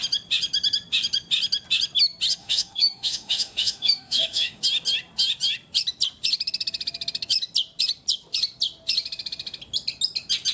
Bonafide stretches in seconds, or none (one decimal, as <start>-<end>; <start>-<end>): 0.0-2.4; 4.6-10.5